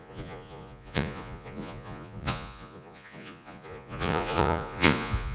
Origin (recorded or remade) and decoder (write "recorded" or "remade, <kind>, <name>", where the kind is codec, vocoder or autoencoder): remade, vocoder, Vocos